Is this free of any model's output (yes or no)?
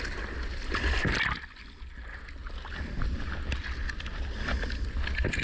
yes